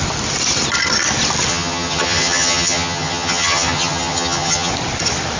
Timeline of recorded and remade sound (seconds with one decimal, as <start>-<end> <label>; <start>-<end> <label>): 0.0-1.5 recorded; 1.5-4.7 remade; 4.7-5.4 recorded